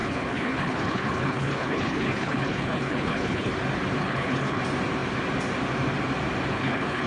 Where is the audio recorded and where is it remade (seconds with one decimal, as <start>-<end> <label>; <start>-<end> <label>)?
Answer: 0.0-3.5 remade; 3.5-4.0 recorded; 4.0-4.6 remade; 4.6-6.5 recorded; 6.5-7.1 remade